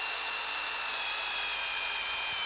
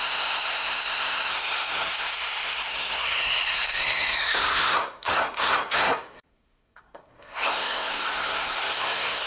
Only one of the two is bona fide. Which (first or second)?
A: first